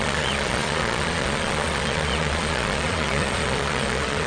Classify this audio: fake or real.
fake